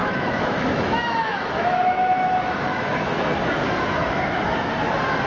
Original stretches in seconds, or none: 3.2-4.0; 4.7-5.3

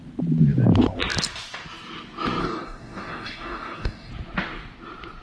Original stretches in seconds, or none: 0.0-2.4; 4.1-5.2